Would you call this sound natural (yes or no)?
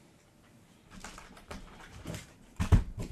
no